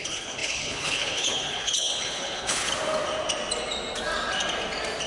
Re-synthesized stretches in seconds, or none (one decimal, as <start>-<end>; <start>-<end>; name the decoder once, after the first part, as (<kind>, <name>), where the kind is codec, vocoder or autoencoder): 0.0-2.7 (codec, HILCodec)